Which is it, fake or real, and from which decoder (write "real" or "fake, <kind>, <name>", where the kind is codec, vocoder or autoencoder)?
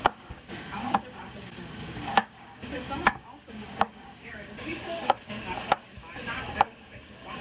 fake, codec, DAC